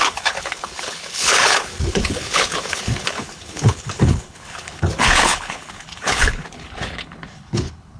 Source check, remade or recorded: remade